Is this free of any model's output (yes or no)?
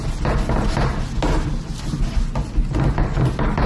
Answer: yes